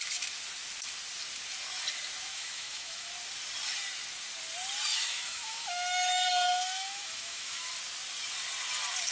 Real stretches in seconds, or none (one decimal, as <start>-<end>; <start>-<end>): 0.0-2.3; 3.1-4.9; 7.6-9.1